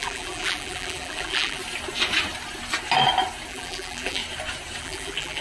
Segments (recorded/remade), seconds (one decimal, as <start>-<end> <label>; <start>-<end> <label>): 0.0-1.6 remade; 1.6-3.5 recorded; 3.5-4.2 remade; 4.2-4.8 recorded; 4.8-5.4 remade